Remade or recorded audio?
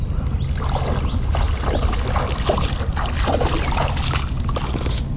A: recorded